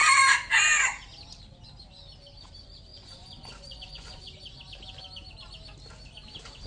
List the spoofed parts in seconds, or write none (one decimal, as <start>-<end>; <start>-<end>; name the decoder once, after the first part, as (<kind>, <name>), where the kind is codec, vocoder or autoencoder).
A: 2.9-4.2 (vocoder, Vocos)

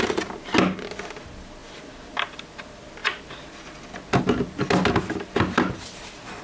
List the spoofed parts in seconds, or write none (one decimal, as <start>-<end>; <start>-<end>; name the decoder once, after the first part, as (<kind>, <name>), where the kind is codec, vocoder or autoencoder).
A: none

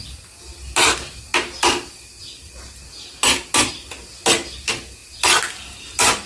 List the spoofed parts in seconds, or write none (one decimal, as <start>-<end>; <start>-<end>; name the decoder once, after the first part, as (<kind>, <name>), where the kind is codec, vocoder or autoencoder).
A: none

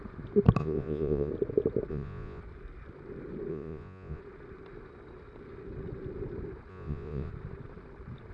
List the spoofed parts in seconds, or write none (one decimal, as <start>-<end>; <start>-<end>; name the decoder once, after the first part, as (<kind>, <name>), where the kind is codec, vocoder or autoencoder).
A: 0.6-1.3 (vocoder, Vocos); 1.9-2.4; 3.5-4.2; 6.7-7.3